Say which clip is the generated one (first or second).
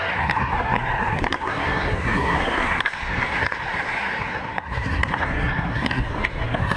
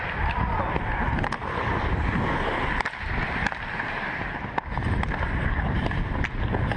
first